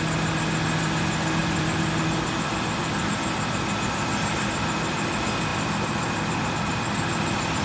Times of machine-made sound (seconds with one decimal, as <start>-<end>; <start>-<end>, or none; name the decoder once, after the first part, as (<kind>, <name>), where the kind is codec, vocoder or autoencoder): 1.4-3.0 (vocoder, BigVGAN v2)